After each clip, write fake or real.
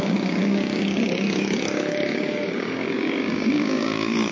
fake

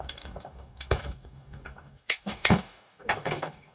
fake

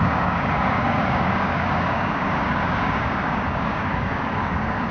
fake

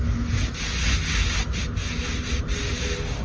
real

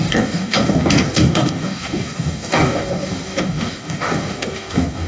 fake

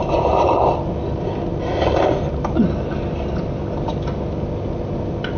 real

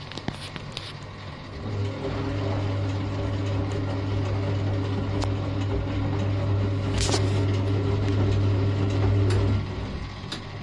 real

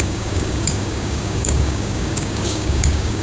fake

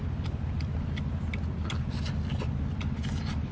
real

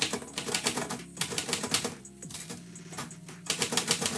real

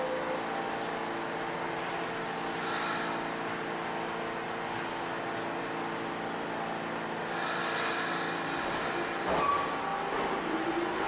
real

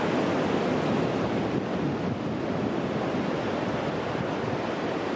real